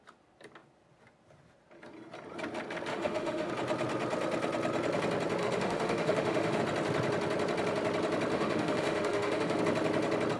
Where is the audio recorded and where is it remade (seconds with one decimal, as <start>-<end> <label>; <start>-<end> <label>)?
0.0-2.9 recorded; 2.9-3.5 remade; 3.5-5.4 recorded; 5.4-6.6 remade; 6.6-8.3 recorded; 8.3-9.6 remade; 9.6-10.4 recorded